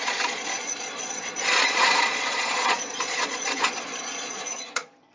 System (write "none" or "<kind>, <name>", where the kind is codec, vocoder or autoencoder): vocoder, Vocos